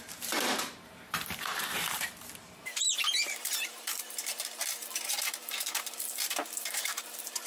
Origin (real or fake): fake